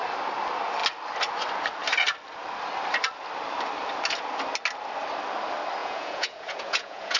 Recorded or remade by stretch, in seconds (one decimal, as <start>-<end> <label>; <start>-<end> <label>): 0.0-5.8 recorded; 5.8-7.2 remade